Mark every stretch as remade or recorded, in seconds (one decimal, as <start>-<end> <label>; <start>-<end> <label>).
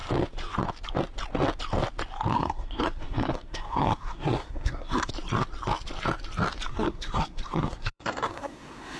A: 0.0-2.3 recorded; 2.3-5.1 remade; 5.1-6.7 recorded; 6.7-9.0 remade